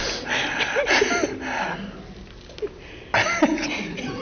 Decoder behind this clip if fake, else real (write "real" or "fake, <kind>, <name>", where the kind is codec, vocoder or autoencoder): real